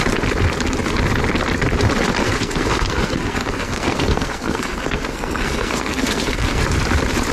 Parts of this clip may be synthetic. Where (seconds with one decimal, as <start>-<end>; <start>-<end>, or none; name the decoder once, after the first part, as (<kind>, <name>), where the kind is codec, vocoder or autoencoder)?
2.2-6.6 (codec, SNAC)